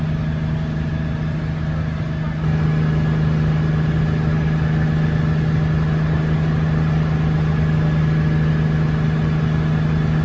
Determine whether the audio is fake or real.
real